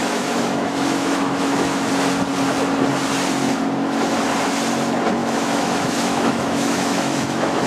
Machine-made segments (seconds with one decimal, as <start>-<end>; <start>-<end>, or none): 0.0-1.9; 5.2-7.7